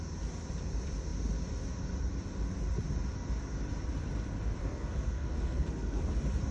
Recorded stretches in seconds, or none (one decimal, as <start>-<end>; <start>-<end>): 0.0-4.6; 6.0-6.5